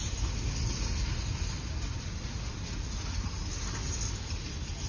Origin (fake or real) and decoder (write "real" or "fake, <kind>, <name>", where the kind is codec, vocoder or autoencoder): real